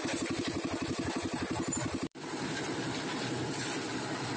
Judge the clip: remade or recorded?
remade